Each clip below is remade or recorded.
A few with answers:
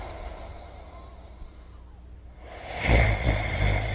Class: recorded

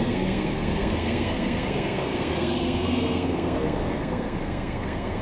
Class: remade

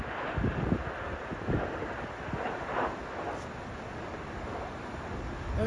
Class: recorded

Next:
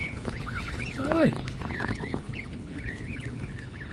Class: remade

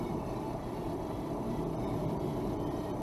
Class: remade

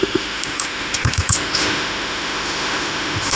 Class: remade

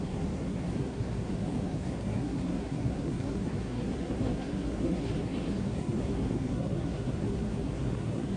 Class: remade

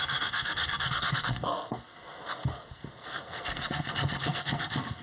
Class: remade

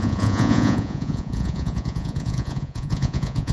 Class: remade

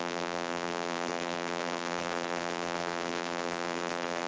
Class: remade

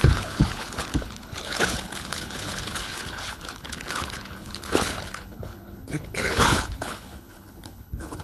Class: remade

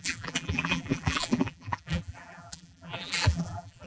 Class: remade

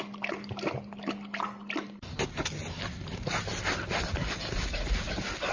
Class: recorded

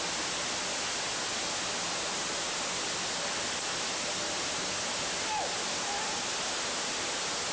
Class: recorded